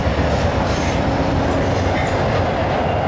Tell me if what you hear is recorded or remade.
recorded